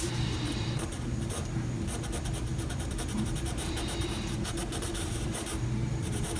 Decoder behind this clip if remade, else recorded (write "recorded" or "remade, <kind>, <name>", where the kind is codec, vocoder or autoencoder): remade, vocoder, BigVGAN v2